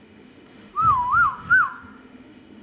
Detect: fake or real fake